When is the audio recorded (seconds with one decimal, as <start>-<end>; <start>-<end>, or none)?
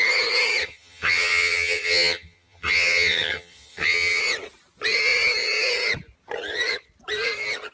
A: 0.0-0.6; 4.2-7.7